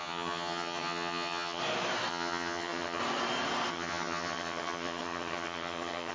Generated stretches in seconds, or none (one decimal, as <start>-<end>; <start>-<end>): 0.0-1.6; 2.1-3.0; 3.7-6.1